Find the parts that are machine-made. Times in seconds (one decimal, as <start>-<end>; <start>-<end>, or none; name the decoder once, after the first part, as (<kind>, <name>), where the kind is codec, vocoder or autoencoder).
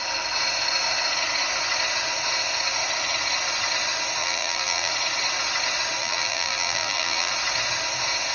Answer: 4.2-4.9 (vocoder, BigVGAN v2); 6.0-7.3